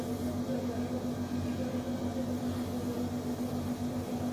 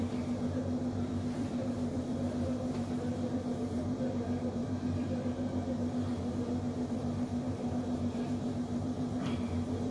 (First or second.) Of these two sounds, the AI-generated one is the second